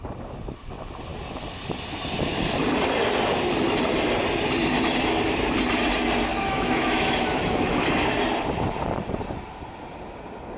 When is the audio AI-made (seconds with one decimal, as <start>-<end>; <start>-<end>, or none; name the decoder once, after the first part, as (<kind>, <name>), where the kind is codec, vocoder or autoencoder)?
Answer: 6.3-7.9 (autoencoder, DAC-VAE)